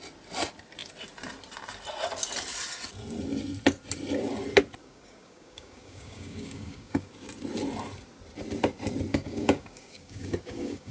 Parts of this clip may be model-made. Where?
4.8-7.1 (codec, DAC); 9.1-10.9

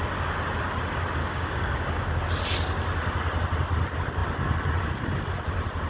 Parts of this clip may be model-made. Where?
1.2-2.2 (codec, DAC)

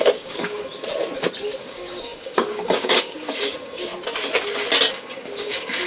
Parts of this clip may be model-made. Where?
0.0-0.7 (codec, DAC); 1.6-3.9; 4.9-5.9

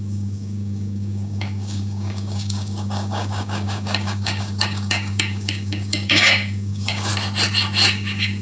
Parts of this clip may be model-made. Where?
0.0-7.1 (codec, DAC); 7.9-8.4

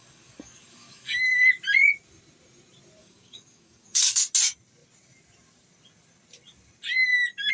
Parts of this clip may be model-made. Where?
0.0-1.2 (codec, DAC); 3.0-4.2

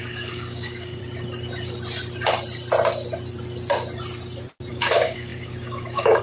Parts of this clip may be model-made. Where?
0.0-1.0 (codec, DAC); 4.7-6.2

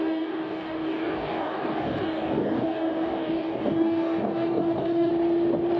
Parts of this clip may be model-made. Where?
0.0-5.1 (codec, DAC)

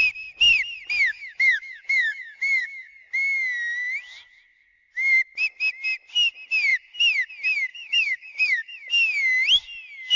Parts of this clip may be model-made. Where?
1.1-2.9 (codec, DAC); 7.7-8.9